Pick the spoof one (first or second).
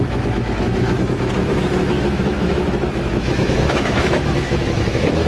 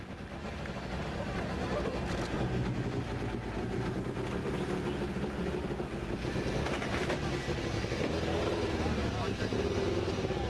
first